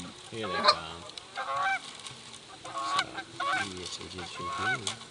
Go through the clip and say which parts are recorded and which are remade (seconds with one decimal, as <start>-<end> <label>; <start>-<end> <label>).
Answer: 0.0-5.1 recorded